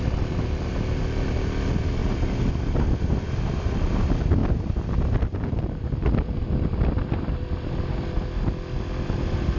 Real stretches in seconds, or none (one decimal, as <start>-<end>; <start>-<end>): 0.0-2.0; 3.1-4.4; 7.9-9.6